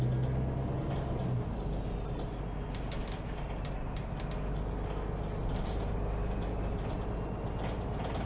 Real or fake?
real